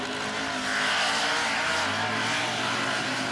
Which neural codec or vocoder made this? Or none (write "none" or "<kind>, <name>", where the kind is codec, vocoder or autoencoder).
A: none